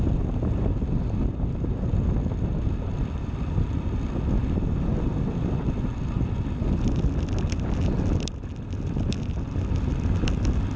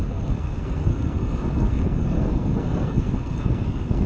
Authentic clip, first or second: first